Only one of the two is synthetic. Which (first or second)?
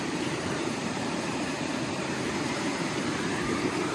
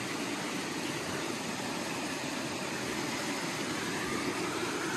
first